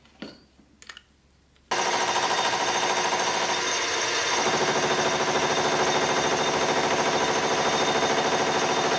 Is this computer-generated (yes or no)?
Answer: no